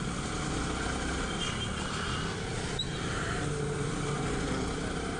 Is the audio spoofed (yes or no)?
no